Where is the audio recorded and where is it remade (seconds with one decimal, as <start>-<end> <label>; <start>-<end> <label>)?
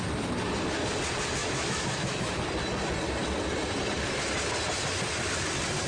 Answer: 0.0-1.4 recorded; 1.4-2.4 remade; 2.4-5.9 recorded